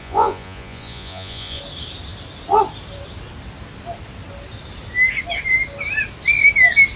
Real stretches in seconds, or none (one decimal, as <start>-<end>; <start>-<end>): 1.6-7.0